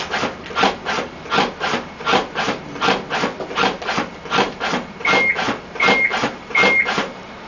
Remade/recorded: recorded